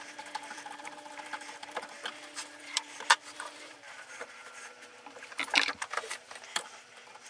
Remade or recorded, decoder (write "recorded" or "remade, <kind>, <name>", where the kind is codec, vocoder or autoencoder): remade, vocoder, BigVGAN v2